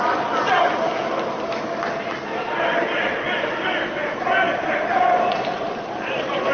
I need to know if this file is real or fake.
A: real